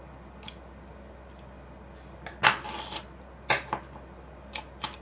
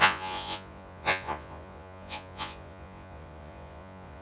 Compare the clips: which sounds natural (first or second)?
first